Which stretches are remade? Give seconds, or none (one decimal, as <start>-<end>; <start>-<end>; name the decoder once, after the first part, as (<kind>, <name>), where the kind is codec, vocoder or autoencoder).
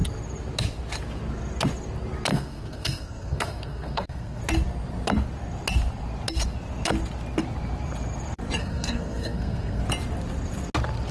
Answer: 2.3-4.4 (codec, SNAC); 8.6-9.8